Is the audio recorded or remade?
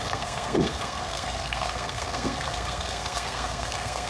remade